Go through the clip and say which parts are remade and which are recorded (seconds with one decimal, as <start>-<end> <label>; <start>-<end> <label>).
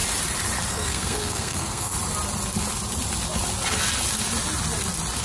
0.0-0.7 recorded; 0.7-1.9 remade; 1.9-5.2 recorded